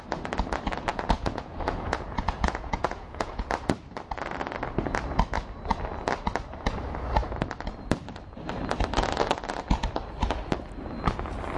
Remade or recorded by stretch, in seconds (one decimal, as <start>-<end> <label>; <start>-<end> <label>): 0.0-0.9 recorded; 0.9-3.5 remade; 3.5-11.6 recorded